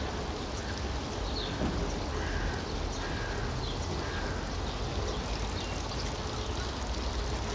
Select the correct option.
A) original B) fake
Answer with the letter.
A